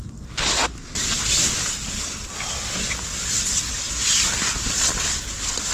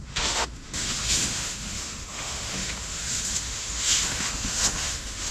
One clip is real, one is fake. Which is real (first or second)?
first